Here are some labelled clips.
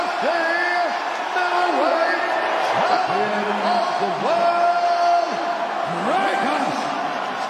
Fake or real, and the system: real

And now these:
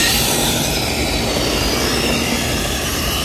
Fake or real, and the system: real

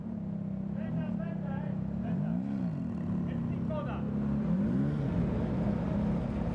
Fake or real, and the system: real